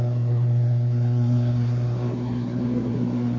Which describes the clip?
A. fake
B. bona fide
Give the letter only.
A